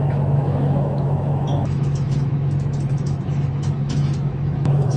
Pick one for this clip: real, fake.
fake